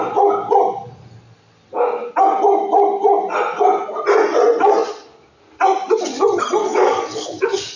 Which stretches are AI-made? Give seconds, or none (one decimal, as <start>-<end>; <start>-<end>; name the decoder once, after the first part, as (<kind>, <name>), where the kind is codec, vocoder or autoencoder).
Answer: 6.6-7.8 (codec, DAC)